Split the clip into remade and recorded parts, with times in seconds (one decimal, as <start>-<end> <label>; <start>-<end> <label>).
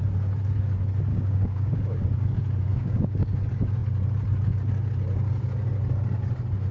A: 0.0-1.1 recorded; 1.1-2.0 remade; 2.0-2.7 recorded; 2.7-3.3 remade; 3.3-6.7 recorded